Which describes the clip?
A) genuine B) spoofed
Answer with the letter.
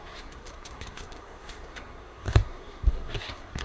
B